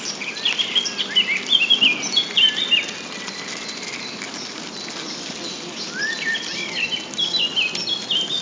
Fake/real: real